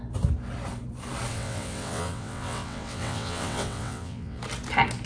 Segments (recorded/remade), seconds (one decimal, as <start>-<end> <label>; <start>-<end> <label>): 0.0-1.3 recorded; 1.3-4.4 remade; 4.4-5.1 recorded